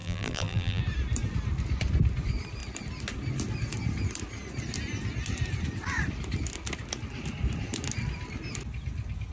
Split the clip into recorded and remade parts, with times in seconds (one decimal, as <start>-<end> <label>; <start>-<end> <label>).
0.0-0.8 remade; 0.8-9.3 recorded